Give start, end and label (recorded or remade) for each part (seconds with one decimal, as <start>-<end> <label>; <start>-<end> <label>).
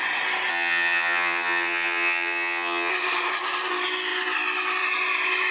0.0-0.5 recorded; 0.5-2.9 remade; 2.9-5.5 recorded